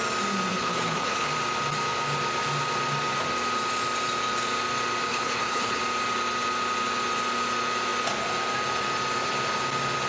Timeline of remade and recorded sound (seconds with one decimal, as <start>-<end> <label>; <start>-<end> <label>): 0.0-0.5 recorded; 0.5-1.3 remade; 1.3-5.1 recorded; 5.1-5.8 remade; 5.8-10.1 recorded